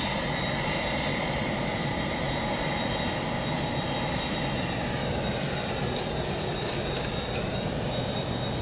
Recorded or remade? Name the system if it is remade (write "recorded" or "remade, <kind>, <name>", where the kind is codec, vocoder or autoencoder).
recorded